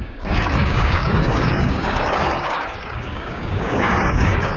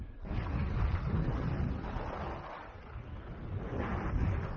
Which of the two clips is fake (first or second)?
first